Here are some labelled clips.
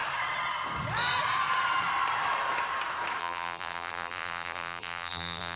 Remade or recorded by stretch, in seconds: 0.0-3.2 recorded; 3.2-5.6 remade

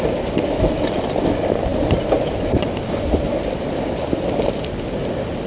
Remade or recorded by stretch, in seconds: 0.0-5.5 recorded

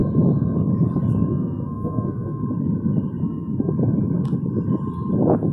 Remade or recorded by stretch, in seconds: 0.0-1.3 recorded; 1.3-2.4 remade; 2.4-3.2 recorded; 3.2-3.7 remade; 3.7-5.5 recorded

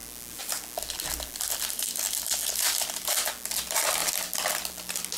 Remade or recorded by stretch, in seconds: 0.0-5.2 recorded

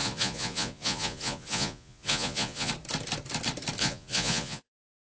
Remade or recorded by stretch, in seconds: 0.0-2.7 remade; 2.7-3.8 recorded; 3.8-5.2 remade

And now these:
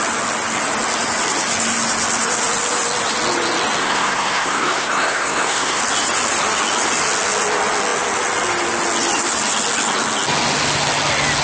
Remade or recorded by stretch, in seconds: 0.0-3.8 recorded; 3.8-5.8 remade; 5.8-11.4 recorded

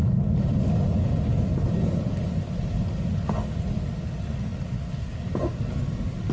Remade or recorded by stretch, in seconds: 0.0-6.3 recorded